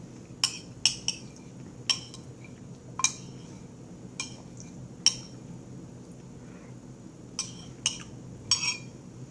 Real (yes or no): yes